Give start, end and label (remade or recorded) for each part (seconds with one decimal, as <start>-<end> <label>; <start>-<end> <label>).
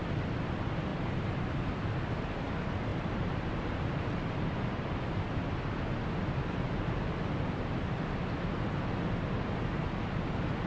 0.0-0.9 recorded; 0.9-1.8 remade; 1.8-2.9 recorded; 2.9-5.1 remade; 5.1-10.7 recorded